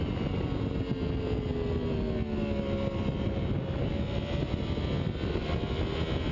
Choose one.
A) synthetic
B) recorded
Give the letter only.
B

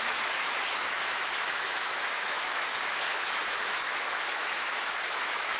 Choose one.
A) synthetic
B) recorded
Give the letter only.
A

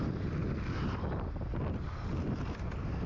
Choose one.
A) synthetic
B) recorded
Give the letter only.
B